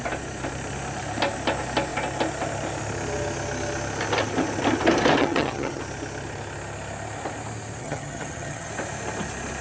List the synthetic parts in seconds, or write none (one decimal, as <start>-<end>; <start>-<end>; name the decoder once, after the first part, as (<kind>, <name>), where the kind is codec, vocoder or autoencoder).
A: 5.2-5.8 (vocoder, HiFi-GAN); 7.8-8.7